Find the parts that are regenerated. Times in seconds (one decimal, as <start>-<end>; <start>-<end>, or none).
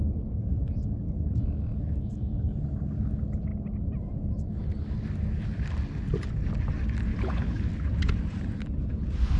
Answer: 7.1-7.6